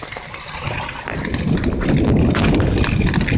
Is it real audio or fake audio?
real